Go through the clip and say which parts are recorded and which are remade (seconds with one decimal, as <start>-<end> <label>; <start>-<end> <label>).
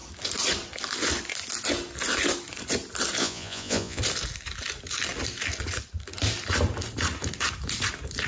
0.0-3.2 recorded; 3.2-4.0 remade; 4.0-8.3 recorded